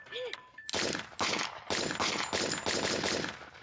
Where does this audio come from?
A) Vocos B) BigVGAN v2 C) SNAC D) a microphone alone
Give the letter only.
D